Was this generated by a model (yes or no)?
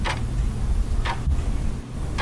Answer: no